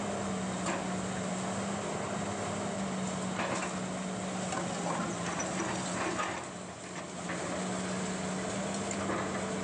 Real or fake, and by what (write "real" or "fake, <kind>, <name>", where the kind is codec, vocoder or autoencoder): real